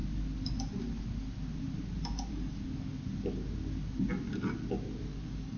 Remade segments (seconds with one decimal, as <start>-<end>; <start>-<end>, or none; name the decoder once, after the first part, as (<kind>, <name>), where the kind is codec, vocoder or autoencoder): 2.3-2.9 (codec, DAC); 5.0-5.6